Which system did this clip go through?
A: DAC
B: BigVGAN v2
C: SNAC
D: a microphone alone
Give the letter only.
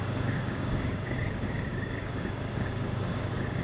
A